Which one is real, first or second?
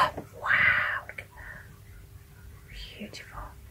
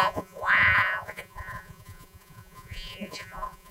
first